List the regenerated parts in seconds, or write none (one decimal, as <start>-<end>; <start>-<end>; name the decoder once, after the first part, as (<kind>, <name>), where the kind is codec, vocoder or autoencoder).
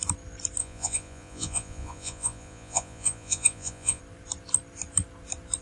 0.6-4.0 (vocoder, Vocos)